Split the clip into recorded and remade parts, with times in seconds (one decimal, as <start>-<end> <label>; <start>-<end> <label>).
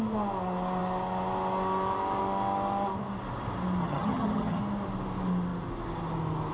0.0-3.8 recorded; 3.8-4.6 remade; 4.6-6.5 recorded